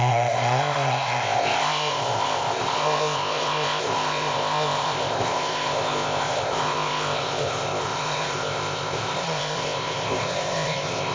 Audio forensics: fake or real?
fake